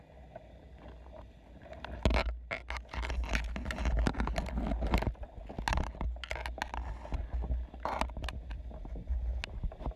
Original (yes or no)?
yes